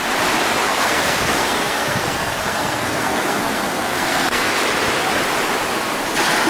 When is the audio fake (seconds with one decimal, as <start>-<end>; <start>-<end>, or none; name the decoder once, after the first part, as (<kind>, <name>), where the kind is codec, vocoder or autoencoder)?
0.6-4.5 (codec, SNAC)